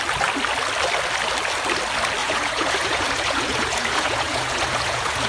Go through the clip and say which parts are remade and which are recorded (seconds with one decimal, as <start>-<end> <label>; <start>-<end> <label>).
0.0-2.2 recorded; 2.2-5.3 remade